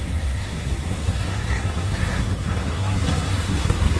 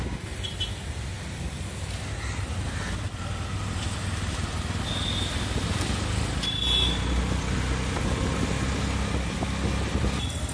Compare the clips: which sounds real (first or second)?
second